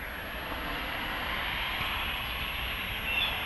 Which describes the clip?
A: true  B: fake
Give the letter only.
A